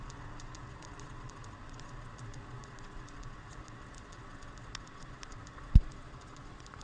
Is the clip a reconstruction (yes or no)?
yes